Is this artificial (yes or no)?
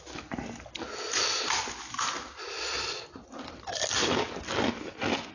no